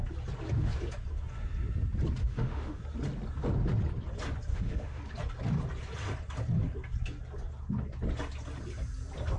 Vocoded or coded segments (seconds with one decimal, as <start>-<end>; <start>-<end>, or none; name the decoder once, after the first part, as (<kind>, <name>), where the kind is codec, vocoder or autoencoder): 2.2-2.8 (autoencoder, DAC-VAE); 4.5-5.0